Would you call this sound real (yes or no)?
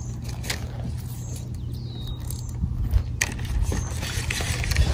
yes